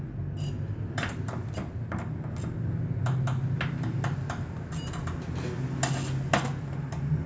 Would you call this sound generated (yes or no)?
no